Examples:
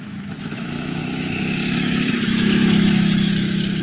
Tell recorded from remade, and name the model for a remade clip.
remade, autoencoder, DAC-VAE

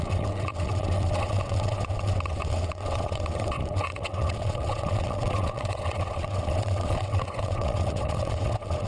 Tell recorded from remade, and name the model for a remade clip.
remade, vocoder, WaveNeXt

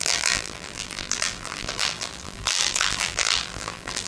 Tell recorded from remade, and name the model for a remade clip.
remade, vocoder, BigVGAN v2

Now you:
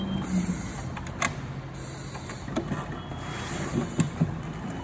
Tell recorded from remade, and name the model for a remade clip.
recorded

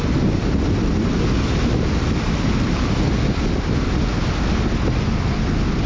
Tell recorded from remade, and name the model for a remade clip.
recorded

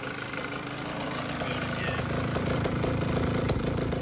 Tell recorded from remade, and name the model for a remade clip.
remade, vocoder, BigVGAN v2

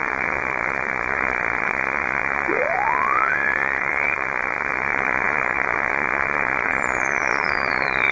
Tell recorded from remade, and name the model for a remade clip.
remade, vocoder, WaveNeXt